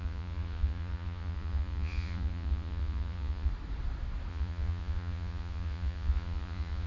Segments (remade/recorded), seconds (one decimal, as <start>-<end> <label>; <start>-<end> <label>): 0.0-3.5 remade; 3.5-4.3 recorded; 4.3-6.9 remade